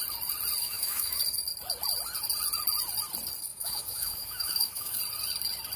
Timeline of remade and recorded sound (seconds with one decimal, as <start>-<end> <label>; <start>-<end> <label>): 0.0-0.6 recorded; 0.6-1.2 remade; 1.2-3.5 recorded; 3.5-5.0 remade; 5.0-5.8 recorded